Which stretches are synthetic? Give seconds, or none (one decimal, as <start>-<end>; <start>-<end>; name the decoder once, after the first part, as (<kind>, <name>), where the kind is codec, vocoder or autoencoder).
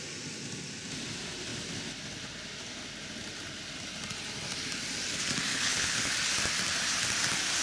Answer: 5.5-6.1 (codec, HILCodec)